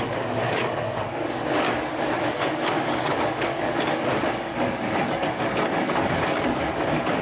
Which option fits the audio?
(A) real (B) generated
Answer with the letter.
B